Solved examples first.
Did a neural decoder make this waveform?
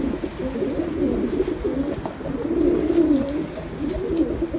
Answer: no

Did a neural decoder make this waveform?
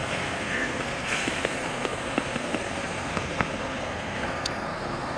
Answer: yes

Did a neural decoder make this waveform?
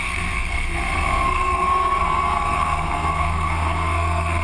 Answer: yes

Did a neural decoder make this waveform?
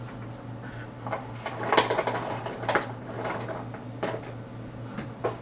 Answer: no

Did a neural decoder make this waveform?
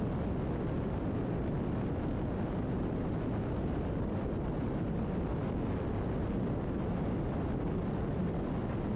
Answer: no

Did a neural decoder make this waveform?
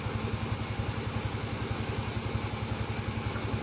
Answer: no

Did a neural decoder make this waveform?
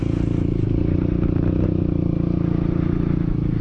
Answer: no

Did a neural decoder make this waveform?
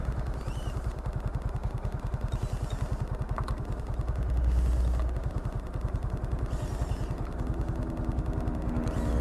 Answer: no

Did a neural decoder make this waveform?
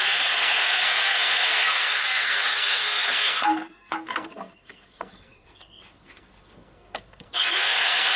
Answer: yes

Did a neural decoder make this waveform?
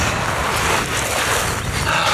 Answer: no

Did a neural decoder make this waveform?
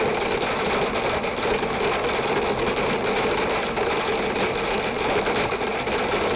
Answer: no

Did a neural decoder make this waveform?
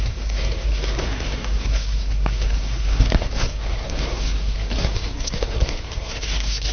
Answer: yes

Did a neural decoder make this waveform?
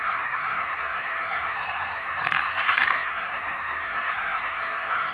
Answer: yes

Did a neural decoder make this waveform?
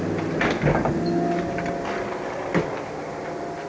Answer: no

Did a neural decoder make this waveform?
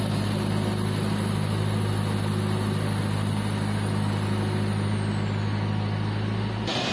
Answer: no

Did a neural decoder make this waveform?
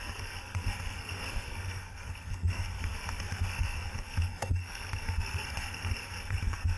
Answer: yes